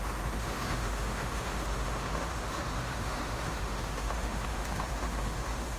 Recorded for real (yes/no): no